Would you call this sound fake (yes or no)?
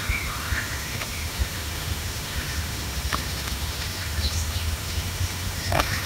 yes